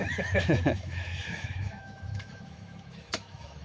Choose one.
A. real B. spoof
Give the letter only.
B